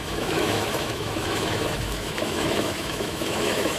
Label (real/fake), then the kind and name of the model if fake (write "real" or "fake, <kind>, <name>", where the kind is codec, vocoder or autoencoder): fake, autoencoder, DAC-VAE